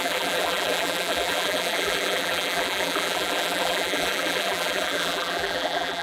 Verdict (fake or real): fake